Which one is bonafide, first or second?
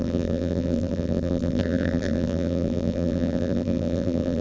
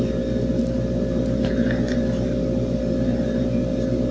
second